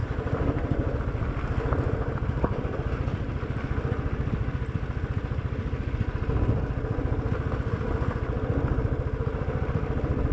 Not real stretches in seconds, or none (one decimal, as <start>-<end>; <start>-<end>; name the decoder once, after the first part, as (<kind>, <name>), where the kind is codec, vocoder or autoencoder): 0.0-1.0 (vocoder, BigVGAN v2)